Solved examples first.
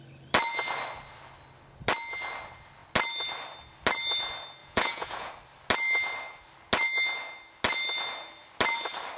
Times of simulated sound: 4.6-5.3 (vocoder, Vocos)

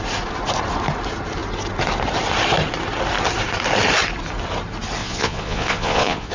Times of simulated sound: 5.0-6.3 (vocoder, Vocos)